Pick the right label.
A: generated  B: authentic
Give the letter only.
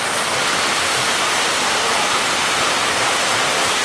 B